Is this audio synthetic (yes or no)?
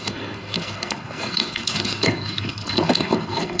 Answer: yes